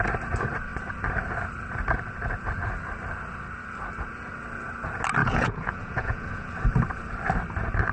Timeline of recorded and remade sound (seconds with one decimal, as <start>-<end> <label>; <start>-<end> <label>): 0.0-5.2 recorded; 5.2-6.5 remade; 6.5-7.9 recorded